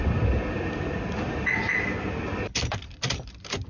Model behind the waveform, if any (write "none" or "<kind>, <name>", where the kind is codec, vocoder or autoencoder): none